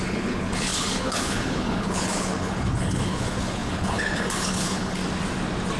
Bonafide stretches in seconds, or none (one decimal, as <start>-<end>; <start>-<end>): 5.0-5.8